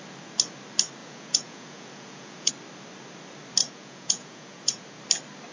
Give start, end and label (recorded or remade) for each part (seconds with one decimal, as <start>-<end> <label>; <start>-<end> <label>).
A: 0.0-1.0 recorded; 1.0-2.5 remade; 2.5-3.6 recorded; 3.6-5.0 remade; 5.0-5.5 recorded